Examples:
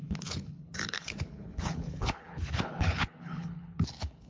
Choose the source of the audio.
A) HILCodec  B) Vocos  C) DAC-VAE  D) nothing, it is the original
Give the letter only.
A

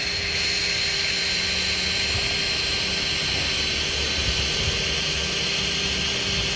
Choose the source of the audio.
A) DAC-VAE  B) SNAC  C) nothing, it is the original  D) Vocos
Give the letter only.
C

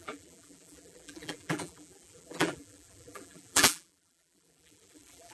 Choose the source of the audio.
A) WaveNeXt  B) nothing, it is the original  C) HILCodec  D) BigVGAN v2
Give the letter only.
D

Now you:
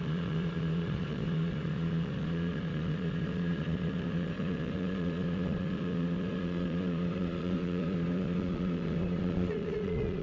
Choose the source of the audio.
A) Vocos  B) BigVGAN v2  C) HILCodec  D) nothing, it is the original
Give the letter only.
A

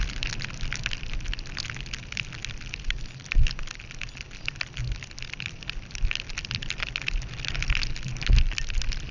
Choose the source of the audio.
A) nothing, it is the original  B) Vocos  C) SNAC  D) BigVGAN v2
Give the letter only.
A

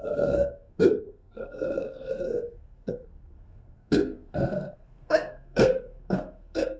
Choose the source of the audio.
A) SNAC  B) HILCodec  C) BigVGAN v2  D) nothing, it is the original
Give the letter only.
A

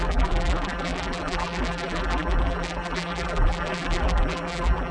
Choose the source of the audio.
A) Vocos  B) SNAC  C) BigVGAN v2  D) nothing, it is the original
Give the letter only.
C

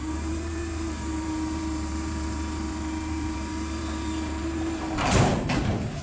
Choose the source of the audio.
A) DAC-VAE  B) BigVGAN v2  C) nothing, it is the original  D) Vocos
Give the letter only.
B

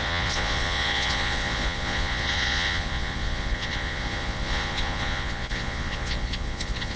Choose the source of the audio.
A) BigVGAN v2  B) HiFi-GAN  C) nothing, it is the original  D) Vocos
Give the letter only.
D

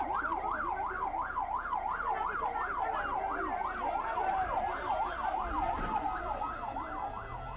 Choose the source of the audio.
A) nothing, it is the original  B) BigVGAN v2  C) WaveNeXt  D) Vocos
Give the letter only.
A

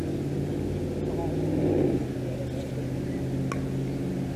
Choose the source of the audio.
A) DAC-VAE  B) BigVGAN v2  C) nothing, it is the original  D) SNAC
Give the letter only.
C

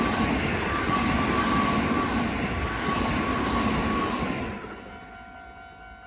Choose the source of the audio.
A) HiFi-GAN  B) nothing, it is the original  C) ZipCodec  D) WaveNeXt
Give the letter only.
B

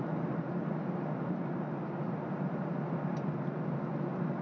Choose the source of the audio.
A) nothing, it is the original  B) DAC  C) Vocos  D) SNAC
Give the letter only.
A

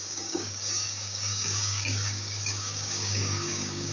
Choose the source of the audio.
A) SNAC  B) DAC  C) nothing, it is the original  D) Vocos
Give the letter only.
B